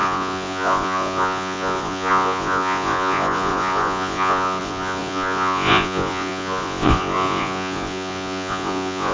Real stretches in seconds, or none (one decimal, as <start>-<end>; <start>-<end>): none